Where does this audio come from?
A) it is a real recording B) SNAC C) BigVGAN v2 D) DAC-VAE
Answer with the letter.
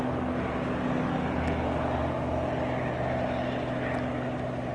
A